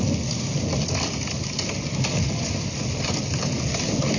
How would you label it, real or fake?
real